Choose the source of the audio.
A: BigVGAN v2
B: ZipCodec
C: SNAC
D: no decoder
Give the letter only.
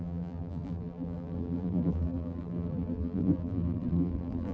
A